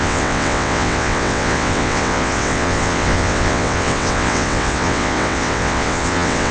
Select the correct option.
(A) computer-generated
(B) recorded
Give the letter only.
A